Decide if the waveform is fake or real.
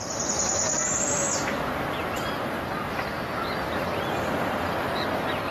real